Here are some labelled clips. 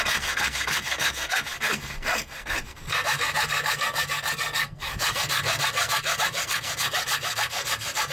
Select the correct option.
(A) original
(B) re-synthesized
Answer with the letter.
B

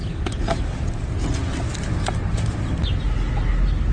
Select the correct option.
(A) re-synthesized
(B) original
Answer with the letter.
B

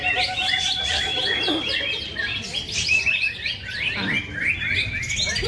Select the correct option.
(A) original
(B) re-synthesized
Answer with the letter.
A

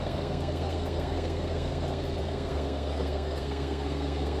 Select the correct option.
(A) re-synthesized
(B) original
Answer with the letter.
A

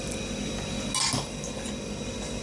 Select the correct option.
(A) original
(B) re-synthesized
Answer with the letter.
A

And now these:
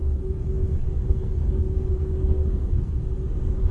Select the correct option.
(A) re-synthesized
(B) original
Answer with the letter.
A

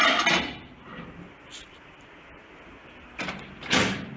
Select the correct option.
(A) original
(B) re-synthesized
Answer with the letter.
A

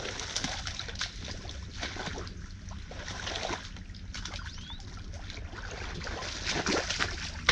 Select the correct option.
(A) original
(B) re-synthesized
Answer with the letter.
A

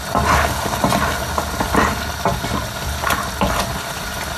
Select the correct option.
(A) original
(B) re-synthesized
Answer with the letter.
A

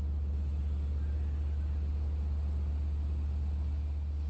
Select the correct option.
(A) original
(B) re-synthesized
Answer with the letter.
A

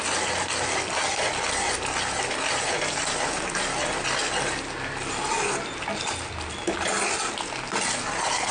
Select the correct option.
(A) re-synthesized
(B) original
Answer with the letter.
B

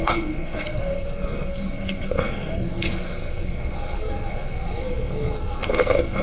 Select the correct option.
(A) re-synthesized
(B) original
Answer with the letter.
A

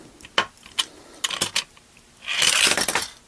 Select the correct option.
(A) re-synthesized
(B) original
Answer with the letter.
B